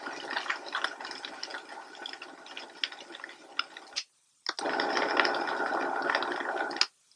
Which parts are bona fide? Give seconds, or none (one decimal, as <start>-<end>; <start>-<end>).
0.0-7.2